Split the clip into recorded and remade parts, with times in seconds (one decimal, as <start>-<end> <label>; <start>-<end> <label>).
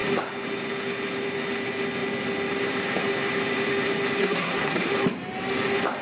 0.0-4.2 recorded; 4.2-4.9 remade; 4.9-6.0 recorded